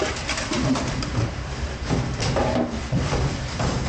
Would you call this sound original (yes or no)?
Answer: no